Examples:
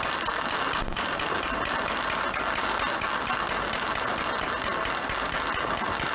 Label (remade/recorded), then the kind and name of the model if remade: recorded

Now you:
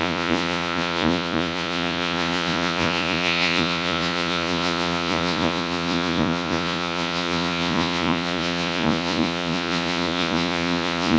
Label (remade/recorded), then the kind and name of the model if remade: remade, vocoder, Vocos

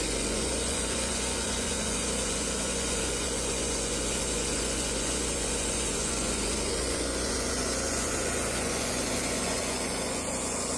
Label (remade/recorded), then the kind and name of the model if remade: remade, vocoder, Vocos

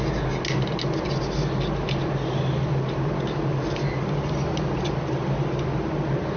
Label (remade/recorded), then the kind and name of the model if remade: recorded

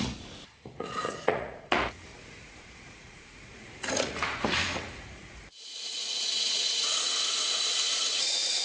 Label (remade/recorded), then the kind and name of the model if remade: remade, vocoder, Vocos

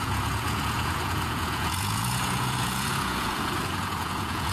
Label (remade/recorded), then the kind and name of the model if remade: remade, vocoder, Vocos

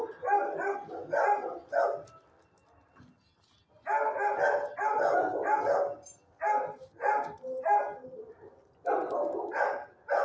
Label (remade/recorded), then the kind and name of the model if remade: recorded